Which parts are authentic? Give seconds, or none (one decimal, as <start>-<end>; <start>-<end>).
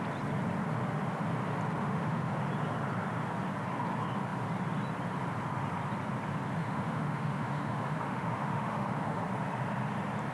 0.0-1.8; 2.3-6.6; 9.2-10.3